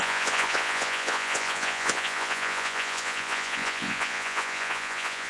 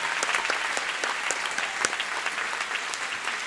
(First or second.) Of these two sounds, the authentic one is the second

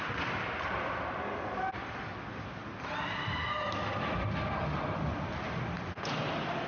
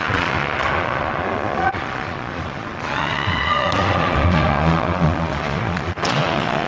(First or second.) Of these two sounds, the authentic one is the first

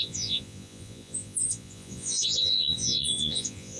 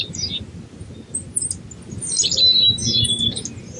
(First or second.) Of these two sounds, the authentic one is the second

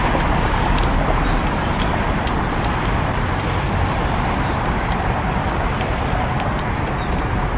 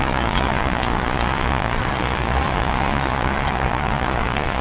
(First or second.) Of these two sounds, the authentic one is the first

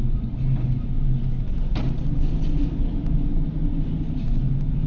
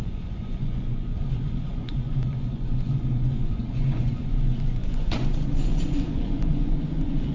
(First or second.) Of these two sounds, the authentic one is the first